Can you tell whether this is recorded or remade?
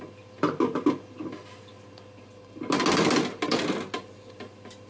recorded